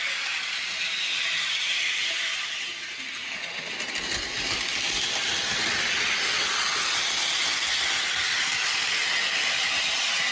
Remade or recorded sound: recorded